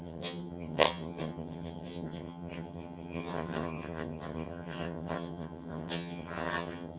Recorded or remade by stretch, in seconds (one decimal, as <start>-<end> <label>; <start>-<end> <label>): 0.0-7.0 remade